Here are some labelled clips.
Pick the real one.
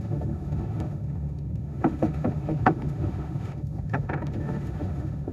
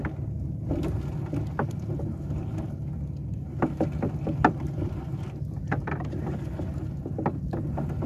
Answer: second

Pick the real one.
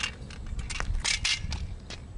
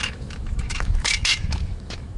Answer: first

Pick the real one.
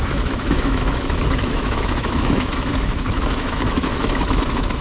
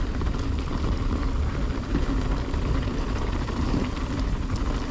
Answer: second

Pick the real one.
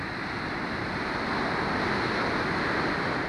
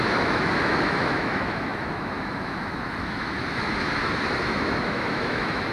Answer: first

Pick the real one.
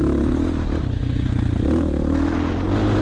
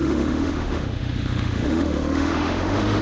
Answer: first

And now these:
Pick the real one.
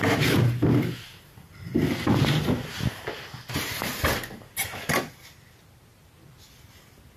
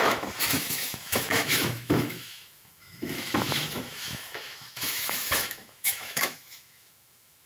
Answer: first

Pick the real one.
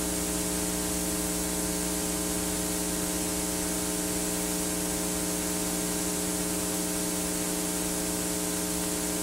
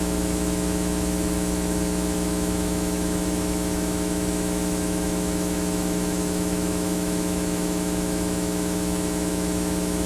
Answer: first